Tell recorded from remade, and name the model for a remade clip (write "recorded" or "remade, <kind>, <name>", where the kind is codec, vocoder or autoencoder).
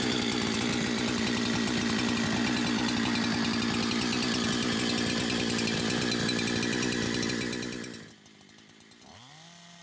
recorded